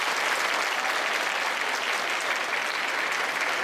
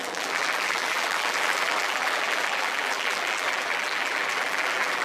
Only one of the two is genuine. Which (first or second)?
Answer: first